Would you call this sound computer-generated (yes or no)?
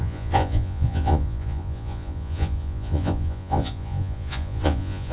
yes